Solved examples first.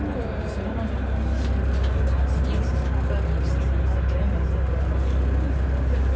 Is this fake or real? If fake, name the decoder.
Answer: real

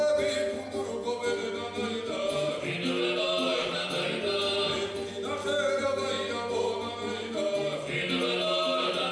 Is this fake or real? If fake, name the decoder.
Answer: real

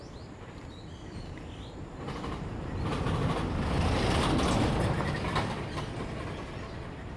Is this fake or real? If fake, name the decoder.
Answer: real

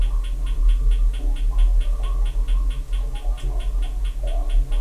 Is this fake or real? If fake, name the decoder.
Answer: real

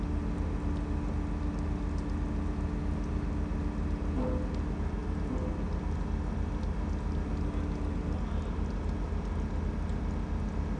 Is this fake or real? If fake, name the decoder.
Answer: real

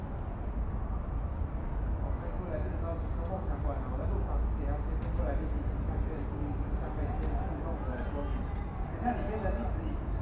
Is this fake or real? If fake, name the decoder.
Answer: real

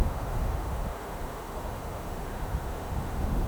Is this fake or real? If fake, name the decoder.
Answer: fake, autoencoder, DAC-VAE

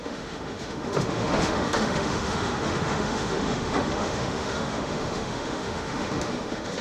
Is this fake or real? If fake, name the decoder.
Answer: fake, autoencoder, DAC-VAE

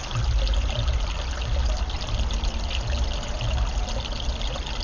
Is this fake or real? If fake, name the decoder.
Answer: real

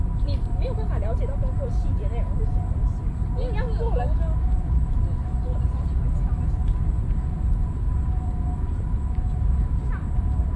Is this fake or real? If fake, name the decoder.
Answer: real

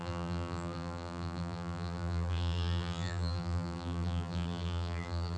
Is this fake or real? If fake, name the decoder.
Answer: fake, vocoder, BigVGAN v2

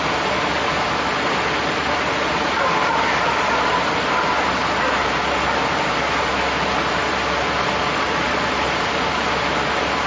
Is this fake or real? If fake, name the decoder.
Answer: real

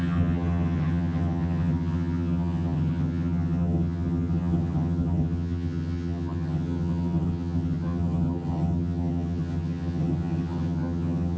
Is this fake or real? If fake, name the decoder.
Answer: fake, vocoder, HiFi-GAN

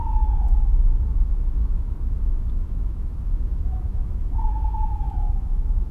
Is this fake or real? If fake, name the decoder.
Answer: fake, autoencoder, DAC-VAE